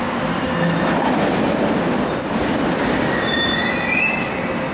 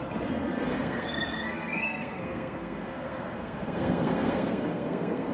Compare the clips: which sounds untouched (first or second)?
first